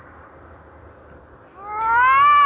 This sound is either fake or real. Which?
real